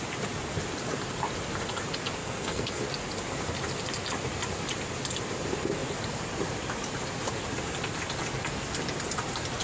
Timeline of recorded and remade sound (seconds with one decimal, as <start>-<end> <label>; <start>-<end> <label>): 0.0-2.2 recorded; 2.2-2.8 remade; 2.8-9.6 recorded